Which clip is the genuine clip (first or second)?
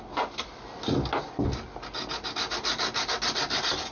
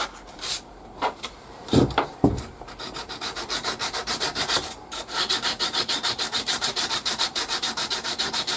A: first